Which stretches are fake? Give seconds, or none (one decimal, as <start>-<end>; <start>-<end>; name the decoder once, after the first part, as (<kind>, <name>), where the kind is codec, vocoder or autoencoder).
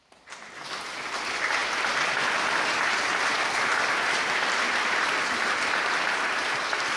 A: none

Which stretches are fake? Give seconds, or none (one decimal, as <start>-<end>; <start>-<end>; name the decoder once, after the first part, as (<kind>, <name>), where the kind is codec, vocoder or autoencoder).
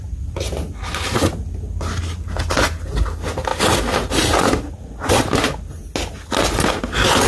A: none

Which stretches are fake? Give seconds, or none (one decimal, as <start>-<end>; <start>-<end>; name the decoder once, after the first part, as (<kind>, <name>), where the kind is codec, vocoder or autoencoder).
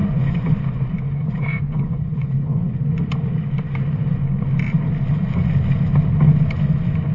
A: 0.0-3.0 (vocoder, Vocos)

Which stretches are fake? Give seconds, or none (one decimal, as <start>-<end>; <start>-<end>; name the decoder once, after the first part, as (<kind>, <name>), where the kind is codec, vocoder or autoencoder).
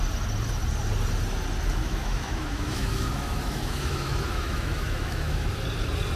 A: 1.8-5.5 (autoencoder, DAC-VAE)